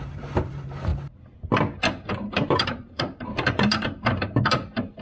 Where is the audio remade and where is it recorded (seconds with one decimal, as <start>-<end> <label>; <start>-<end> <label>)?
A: 0.0-0.9 remade; 0.9-2.2 recorded; 2.2-5.0 remade